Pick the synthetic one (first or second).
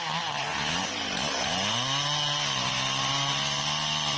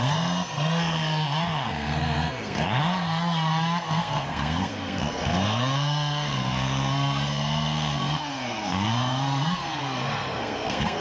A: second